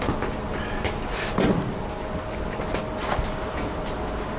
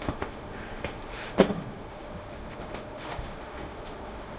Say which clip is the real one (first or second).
first